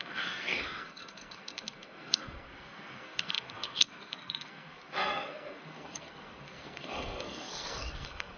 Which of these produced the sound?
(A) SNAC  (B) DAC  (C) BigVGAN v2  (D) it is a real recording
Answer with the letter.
A